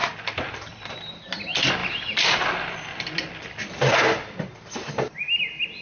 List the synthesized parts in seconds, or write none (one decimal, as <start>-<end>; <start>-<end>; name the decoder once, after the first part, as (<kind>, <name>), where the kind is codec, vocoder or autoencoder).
0.0-1.3 (vocoder, BigVGAN v2); 1.8-4.9